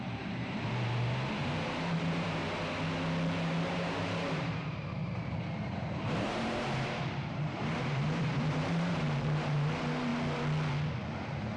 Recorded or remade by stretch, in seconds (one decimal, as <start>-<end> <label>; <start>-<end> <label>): 0.0-2.4 remade; 2.4-3.5 recorded; 3.5-10.1 remade; 10.1-11.1 recorded; 11.1-11.6 remade